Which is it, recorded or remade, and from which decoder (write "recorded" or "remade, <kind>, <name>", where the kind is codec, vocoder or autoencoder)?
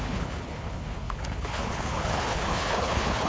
remade, codec, HILCodec